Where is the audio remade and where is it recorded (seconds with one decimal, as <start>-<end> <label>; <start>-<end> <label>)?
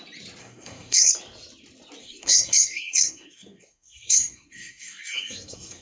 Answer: 0.0-0.4 recorded; 0.4-1.1 remade; 1.1-2.0 recorded; 2.0-5.8 remade